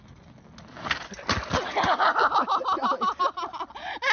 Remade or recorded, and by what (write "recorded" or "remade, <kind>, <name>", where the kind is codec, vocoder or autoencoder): recorded